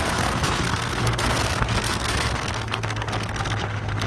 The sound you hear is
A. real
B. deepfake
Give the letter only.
B